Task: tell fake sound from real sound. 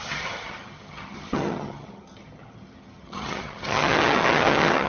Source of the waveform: fake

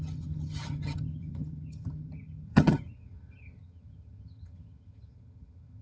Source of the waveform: fake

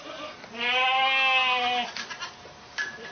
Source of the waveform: real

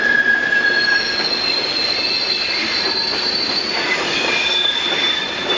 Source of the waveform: real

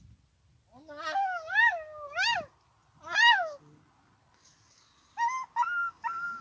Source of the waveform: real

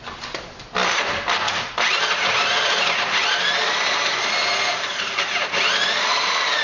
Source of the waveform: real